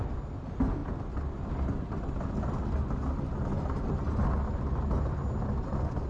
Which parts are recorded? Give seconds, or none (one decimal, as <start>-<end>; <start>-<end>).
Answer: 0.0-6.1